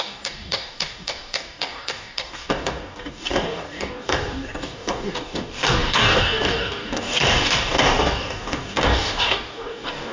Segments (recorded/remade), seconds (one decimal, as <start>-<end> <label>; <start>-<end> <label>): 0.0-10.1 remade